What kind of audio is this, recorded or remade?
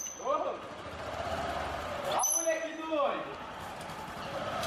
recorded